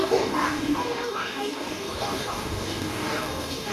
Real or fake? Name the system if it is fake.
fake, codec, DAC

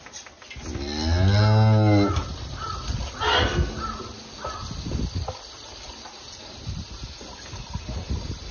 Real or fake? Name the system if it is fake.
real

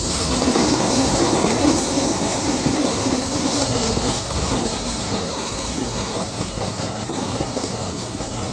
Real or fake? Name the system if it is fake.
fake, codec, SNAC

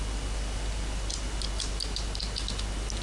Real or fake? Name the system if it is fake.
real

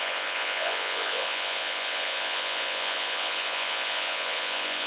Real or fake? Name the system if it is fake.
fake, vocoder, Vocos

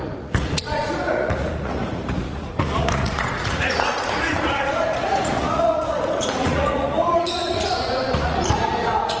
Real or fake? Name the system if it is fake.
fake, vocoder, Vocos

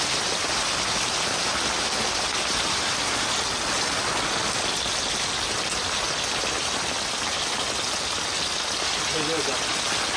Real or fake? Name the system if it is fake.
real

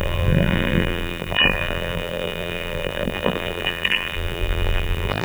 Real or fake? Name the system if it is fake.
fake, vocoder, BigVGAN v2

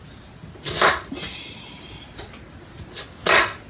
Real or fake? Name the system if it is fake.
real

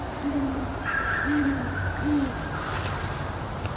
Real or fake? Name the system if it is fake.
fake, vocoder, BigVGAN v2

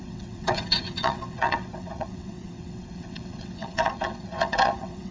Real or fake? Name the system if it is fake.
fake, vocoder, WaveNeXt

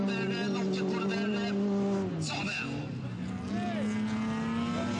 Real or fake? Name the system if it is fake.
real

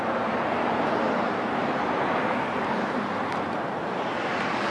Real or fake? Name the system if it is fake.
fake, vocoder, BigVGAN v2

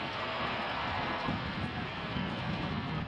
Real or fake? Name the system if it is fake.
fake, codec, SNAC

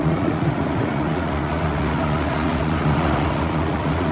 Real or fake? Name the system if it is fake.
fake, vocoder, Vocos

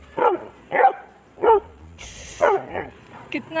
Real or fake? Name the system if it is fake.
fake, vocoder, Vocos